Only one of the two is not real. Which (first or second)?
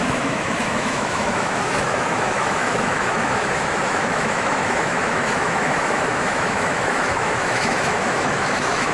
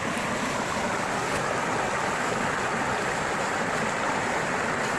first